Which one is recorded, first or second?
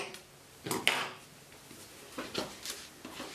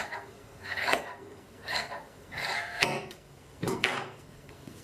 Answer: first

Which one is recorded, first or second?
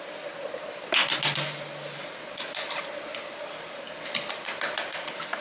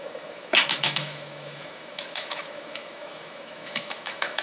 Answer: first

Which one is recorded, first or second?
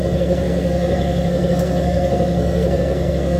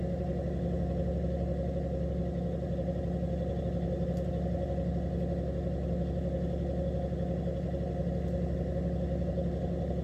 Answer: second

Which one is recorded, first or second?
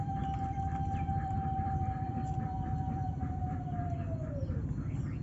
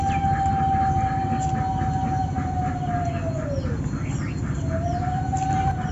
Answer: second